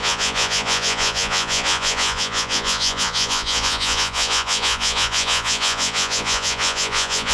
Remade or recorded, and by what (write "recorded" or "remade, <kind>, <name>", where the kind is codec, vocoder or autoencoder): remade, vocoder, Vocos